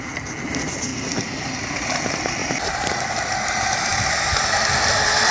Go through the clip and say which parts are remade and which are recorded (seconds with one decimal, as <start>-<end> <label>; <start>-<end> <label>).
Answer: 0.0-2.4 recorded; 2.4-3.1 remade; 3.1-5.3 recorded

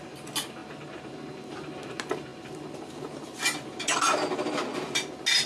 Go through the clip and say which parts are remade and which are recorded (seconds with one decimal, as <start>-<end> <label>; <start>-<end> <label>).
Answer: 0.0-5.5 recorded

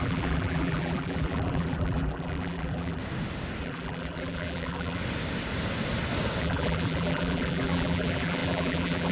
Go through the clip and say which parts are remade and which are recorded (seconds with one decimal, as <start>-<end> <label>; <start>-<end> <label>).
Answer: 0.0-3.0 remade; 3.0-3.6 recorded; 3.6-5.0 remade; 5.0-6.4 recorded; 6.4-9.1 remade